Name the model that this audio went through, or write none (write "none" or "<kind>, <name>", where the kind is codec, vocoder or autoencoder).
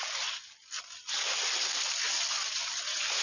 none